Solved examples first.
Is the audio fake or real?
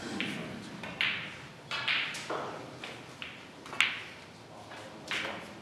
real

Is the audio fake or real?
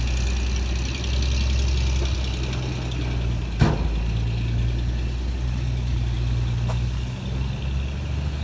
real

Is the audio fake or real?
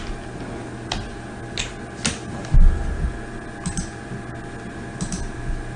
real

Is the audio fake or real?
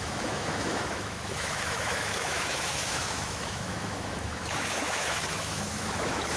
fake